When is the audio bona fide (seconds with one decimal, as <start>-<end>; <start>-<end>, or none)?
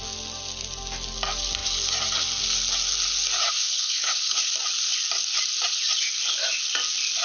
0.0-3.6; 4.5-7.2